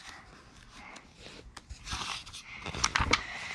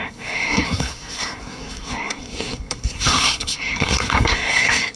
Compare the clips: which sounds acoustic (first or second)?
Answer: first